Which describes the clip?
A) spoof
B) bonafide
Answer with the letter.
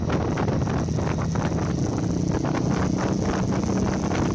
B